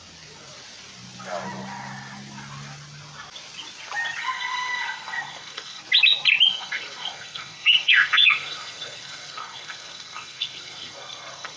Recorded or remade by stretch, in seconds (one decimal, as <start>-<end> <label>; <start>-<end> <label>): 0.0-4.2 recorded; 4.2-5.8 remade; 5.8-6.5 recorded; 6.5-11.6 remade